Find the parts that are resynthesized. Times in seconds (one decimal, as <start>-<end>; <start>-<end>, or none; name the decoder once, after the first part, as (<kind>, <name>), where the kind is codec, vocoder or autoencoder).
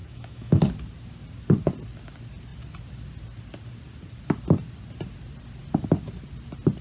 0.0-0.6 (autoencoder, DAC-VAE)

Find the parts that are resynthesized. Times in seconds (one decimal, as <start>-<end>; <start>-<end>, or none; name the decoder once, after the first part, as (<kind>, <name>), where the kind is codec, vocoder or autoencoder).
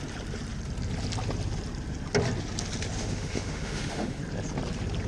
3.0-4.2 (autoencoder, DAC-VAE)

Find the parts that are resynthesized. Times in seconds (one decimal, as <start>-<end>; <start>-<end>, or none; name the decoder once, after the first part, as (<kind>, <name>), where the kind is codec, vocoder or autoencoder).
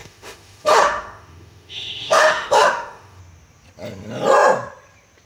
0.0-3.2 (autoencoder, DAC-VAE)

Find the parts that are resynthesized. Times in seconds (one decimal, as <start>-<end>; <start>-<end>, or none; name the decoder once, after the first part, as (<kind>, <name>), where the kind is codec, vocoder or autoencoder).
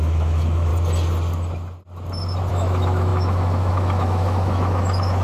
0.0-0.7 (autoencoder, DAC-VAE); 2.5-5.2